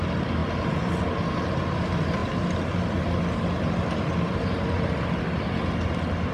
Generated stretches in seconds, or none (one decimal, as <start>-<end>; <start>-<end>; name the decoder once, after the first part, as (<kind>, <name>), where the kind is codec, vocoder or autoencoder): none